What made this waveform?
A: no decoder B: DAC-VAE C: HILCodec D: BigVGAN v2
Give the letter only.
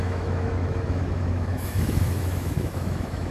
B